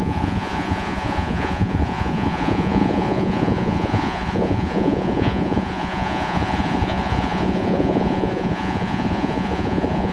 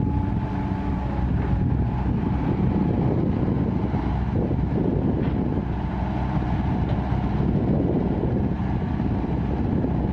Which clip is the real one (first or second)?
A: second